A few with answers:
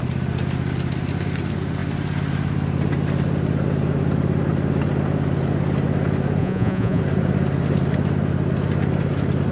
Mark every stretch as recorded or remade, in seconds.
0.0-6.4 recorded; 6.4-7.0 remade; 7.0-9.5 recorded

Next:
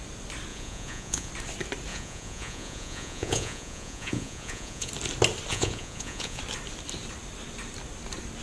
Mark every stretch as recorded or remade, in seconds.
0.0-0.5 recorded; 0.5-1.3 remade; 1.3-1.9 recorded; 1.9-4.9 remade; 4.9-5.5 recorded; 5.5-6.4 remade; 6.4-8.4 recorded